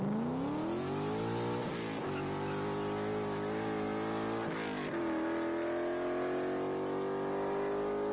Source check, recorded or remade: recorded